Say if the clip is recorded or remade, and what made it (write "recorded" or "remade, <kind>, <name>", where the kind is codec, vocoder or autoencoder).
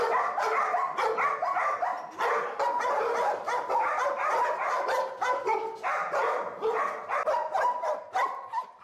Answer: recorded